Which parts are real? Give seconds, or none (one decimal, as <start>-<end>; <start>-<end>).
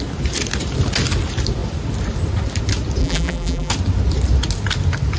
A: 0.0-3.0; 3.7-5.2